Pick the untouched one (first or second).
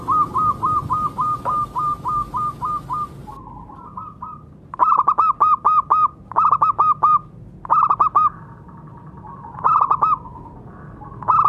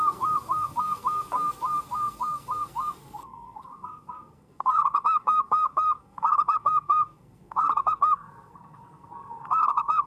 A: first